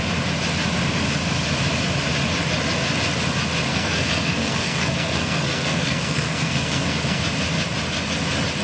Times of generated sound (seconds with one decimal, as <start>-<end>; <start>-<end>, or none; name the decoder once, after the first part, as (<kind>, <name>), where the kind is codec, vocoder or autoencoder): 3.7-7.2 (codec, SNAC)